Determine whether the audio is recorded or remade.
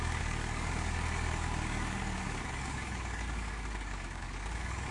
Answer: remade